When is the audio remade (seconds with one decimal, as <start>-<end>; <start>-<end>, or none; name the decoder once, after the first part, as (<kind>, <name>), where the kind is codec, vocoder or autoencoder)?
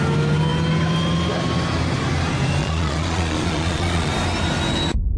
2.6-4.1 (vocoder, Vocos)